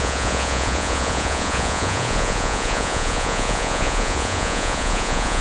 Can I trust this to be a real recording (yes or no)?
no